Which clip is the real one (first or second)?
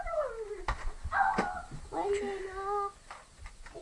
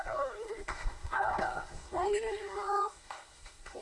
first